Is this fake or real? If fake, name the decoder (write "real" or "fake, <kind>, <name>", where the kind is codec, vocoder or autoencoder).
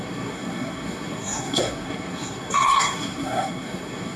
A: fake, codec, SNAC